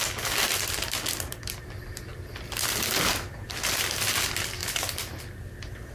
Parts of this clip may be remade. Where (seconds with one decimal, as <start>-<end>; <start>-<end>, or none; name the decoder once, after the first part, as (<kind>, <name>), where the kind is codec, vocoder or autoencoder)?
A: none